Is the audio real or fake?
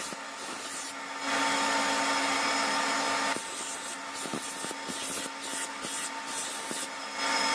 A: real